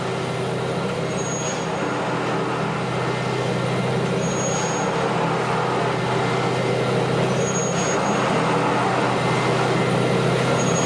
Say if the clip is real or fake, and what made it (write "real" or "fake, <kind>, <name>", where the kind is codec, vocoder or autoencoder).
real